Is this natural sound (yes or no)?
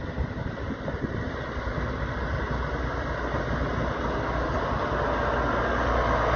yes